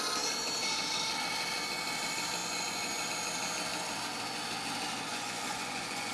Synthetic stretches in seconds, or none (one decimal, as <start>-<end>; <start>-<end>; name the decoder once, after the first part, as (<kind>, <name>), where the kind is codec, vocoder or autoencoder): 2.4-3.0 (vocoder, Vocos); 5.1-6.1